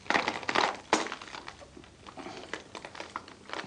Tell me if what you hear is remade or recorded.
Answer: recorded